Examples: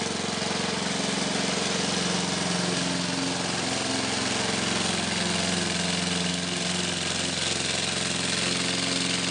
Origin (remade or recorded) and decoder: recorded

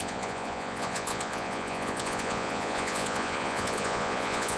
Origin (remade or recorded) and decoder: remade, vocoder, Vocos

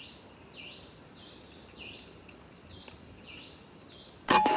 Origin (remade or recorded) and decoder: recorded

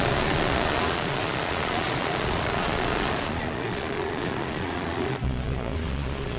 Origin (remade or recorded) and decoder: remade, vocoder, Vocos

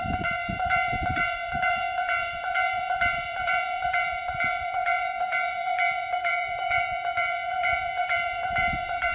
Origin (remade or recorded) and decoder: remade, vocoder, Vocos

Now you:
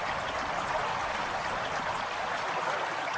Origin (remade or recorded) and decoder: remade, vocoder, BigVGAN v2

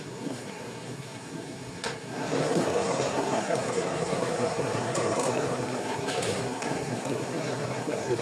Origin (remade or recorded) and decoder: remade, codec, SNAC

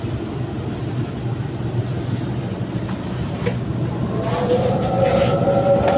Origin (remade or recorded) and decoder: recorded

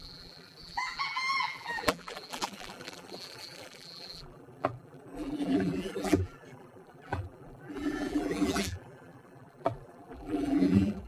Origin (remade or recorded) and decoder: remade, vocoder, BigVGAN v2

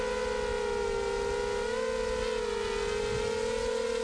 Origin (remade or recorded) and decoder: recorded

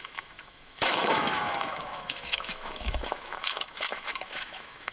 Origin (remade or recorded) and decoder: remade, autoencoder, DAC-VAE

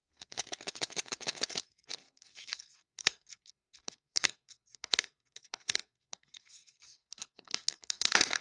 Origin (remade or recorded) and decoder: remade, codec, SNAC